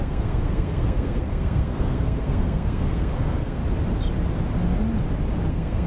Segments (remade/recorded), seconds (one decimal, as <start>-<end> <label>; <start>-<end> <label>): 0.0-3.6 remade; 3.6-5.5 recorded; 5.5-5.9 remade